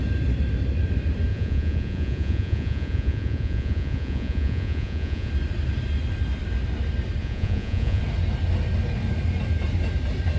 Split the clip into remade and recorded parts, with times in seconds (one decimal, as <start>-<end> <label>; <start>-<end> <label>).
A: 0.0-1.3 recorded; 1.3-5.3 remade; 5.3-7.2 recorded; 7.2-8.0 remade; 8.0-10.4 recorded